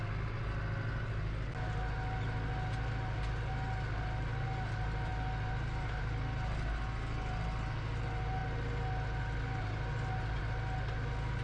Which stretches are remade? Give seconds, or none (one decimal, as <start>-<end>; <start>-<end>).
none